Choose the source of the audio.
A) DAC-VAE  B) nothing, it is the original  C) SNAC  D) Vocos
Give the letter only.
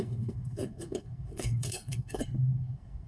C